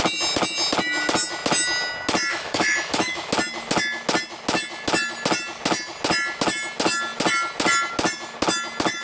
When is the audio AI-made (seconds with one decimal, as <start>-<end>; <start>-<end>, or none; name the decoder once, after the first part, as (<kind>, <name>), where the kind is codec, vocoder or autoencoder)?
2.3-3.3 (autoencoder, DAC-VAE)

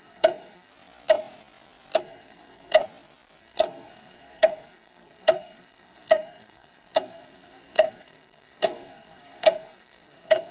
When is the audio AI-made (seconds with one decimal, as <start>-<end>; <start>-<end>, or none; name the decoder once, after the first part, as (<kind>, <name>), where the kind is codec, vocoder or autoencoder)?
0.0-0.7 (codec, SNAC); 2.0-2.8; 3.4-10.5